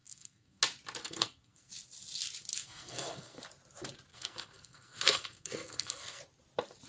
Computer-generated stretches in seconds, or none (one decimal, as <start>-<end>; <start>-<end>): 0.0-0.6; 1.0-1.7; 2.5-3.4; 4.1-6.2